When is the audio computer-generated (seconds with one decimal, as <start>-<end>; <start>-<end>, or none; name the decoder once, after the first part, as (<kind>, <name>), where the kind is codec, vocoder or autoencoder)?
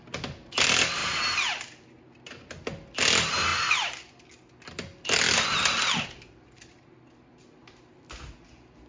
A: none